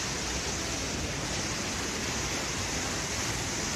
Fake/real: real